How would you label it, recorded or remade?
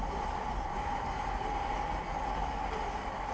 recorded